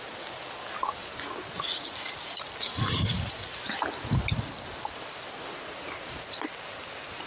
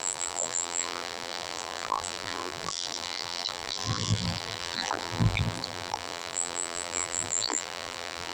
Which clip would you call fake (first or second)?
second